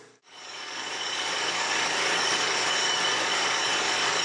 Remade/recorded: remade